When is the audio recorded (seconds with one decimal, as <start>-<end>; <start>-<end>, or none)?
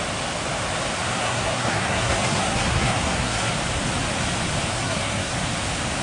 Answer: 0.0-1.1; 3.5-4.7; 5.3-6.0